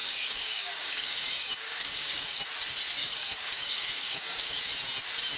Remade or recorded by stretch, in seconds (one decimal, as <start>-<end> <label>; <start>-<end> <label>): 0.0-2.4 remade; 2.4-3.0 recorded; 3.0-4.6 remade; 4.6-5.4 recorded